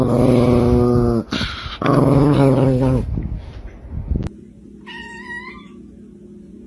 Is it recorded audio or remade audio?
recorded